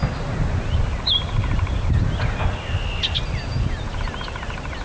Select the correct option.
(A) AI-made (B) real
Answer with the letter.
B